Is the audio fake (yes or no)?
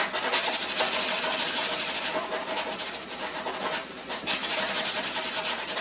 no